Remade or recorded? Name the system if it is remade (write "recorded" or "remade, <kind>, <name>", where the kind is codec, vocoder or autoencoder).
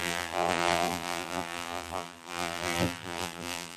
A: remade, vocoder, BigVGAN v2